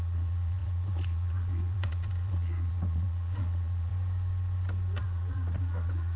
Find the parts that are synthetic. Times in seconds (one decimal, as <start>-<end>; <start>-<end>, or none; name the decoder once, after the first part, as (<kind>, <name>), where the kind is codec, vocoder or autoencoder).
0.0-3.9 (vocoder, Vocos); 5.0-6.2